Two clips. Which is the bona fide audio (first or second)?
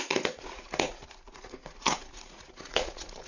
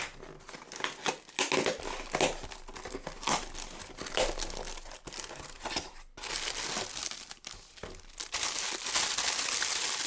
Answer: second